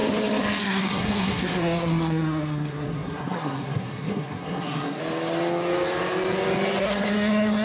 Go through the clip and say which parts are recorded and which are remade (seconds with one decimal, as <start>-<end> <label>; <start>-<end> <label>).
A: 0.0-0.6 recorded; 0.6-5.0 remade; 5.0-6.8 recorded; 6.8-7.6 remade